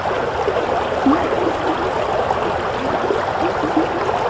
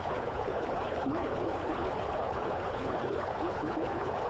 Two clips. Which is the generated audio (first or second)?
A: second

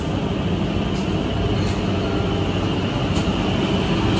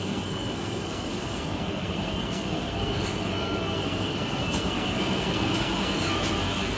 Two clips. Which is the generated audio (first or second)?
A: second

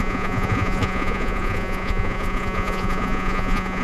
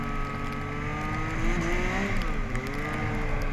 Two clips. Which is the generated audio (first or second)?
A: first